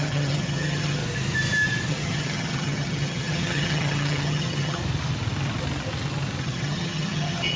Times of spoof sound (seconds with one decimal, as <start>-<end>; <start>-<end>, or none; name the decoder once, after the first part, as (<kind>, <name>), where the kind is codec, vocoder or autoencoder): 0.0-1.0 (vocoder, HiFi-GAN); 1.9-4.8; 6.4-7.6